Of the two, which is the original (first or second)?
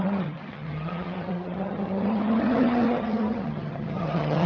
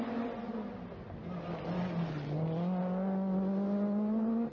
second